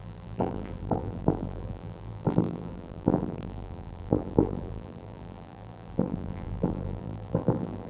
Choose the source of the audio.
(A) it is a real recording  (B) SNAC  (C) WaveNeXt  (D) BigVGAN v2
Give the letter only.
D